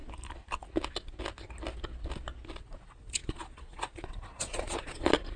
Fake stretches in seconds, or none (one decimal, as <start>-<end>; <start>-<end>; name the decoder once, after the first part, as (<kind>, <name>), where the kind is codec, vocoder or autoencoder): 2.6-5.4 (vocoder, Vocos)